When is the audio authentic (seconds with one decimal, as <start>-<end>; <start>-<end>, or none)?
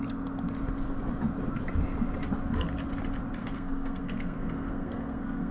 0.0-3.4